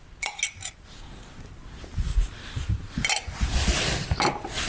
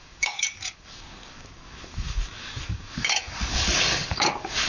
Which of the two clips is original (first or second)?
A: first